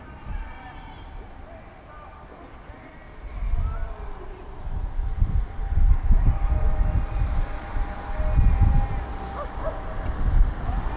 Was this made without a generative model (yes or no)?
yes